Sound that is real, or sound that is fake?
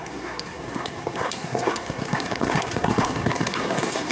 fake